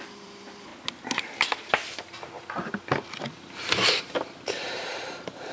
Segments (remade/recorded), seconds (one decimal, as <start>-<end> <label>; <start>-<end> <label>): 0.0-0.7 remade; 0.7-4.0 recorded; 4.0-5.5 remade